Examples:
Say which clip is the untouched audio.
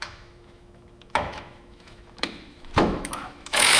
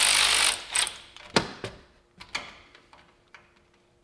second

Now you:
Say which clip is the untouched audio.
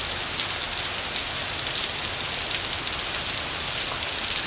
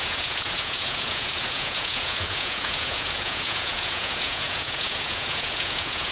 first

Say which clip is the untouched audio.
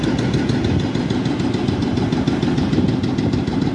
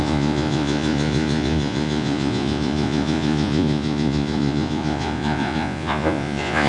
first